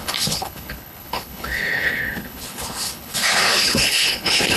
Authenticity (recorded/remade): remade